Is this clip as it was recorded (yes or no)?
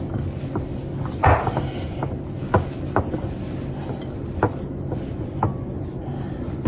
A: yes